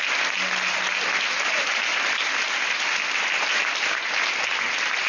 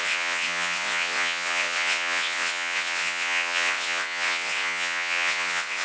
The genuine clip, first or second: first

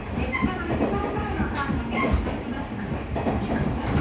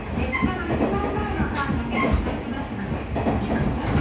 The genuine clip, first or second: second